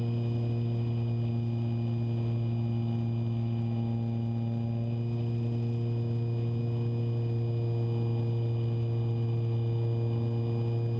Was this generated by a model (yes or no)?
no